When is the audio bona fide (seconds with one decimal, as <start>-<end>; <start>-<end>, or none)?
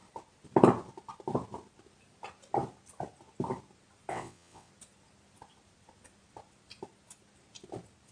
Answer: 0.0-4.1; 4.7-8.1